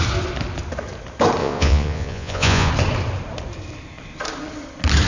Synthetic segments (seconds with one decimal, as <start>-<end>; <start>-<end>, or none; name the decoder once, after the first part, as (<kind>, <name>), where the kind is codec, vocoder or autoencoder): 1.4-2.7 (vocoder, Vocos)